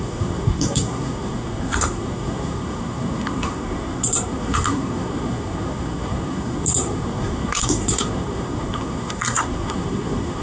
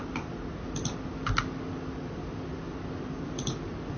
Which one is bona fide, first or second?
second